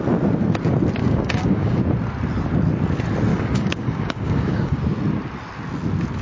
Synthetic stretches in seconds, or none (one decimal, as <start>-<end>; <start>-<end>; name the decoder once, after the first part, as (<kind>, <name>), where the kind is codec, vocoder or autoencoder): 1.0-1.8 (codec, DAC); 3.3-4.8